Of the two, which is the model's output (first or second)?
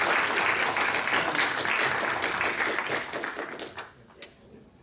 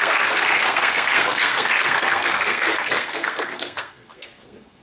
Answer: second